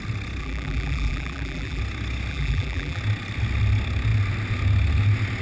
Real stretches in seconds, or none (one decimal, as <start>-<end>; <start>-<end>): 0.0-0.4; 1.8-2.3; 3.0-5.4